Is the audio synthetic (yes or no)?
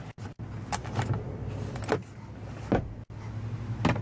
no